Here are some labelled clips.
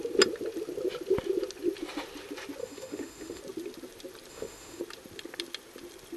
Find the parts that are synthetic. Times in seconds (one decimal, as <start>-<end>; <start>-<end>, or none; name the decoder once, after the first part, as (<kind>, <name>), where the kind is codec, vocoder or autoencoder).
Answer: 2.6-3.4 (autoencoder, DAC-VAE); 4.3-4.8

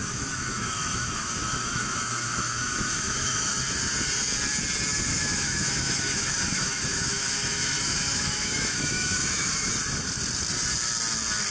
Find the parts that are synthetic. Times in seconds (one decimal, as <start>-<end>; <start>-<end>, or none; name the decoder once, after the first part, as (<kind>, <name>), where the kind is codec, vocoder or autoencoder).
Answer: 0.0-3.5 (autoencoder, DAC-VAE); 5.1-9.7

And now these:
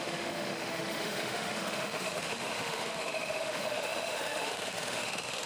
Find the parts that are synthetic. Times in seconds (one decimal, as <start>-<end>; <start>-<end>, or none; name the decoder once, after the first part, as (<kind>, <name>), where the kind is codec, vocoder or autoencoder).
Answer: 0.0-5.5 (autoencoder, DAC-VAE)

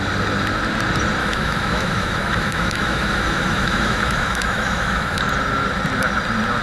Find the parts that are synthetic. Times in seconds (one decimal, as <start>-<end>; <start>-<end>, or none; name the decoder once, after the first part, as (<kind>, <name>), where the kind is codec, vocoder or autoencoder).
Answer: 1.2-5.2 (autoencoder, DAC-VAE)

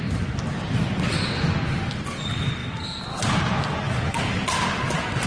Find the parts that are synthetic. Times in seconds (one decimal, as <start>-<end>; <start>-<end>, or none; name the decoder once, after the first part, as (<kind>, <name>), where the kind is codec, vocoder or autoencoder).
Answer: none

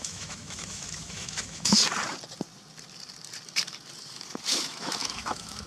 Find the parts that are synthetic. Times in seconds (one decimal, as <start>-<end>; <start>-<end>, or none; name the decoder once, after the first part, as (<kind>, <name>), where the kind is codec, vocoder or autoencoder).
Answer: 0.0-1.8 (autoencoder, DAC-VAE); 4.5-5.7